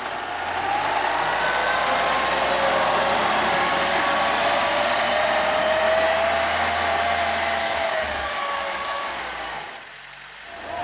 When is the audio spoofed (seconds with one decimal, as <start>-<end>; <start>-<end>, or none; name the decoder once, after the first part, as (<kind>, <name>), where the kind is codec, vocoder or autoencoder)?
7.6-9.2 (codec, DAC)